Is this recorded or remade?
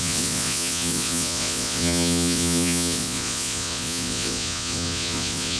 remade